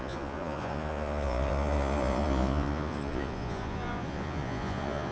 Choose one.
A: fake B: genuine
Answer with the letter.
A